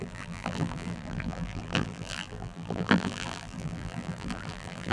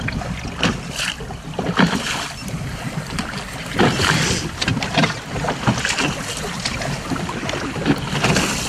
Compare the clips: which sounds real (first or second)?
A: second